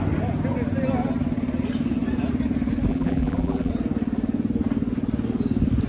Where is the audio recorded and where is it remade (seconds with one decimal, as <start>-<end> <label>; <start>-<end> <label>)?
0.0-2.9 recorded; 2.9-3.7 remade; 3.7-5.9 recorded